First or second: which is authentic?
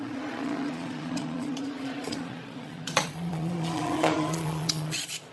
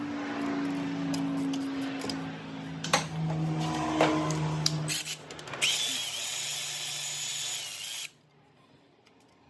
second